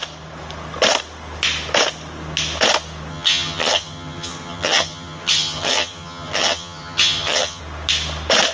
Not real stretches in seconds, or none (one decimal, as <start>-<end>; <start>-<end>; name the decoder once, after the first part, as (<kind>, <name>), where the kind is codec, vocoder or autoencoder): 3.1-7.6 (vocoder, HiFi-GAN)